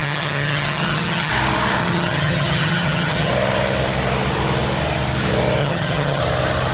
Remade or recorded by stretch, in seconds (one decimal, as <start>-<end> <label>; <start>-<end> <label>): 0.0-1.3 remade; 1.3-1.8 recorded; 1.8-3.3 remade; 3.3-5.6 recorded; 5.6-6.2 remade; 6.2-6.7 recorded